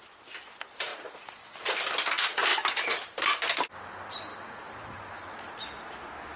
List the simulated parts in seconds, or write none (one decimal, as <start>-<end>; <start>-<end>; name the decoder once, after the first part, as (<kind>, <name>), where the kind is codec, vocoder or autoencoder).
0.9-1.5 (vocoder, Vocos)